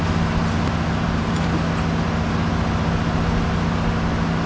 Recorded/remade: recorded